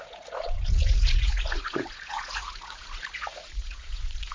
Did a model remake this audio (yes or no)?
yes